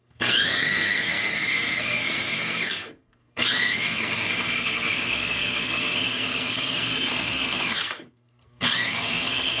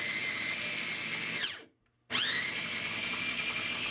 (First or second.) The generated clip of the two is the first